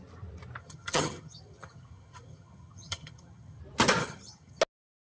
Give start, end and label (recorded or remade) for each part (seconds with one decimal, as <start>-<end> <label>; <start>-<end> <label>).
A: 0.0-0.6 recorded; 0.6-3.6 remade; 3.6-4.0 recorded; 4.0-4.6 remade; 4.6-5.0 recorded